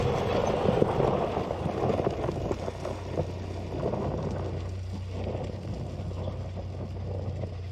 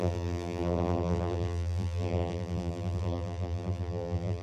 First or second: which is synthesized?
second